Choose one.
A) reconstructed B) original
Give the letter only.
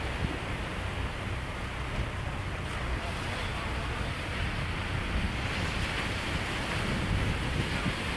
B